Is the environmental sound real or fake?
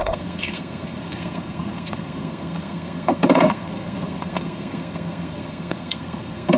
fake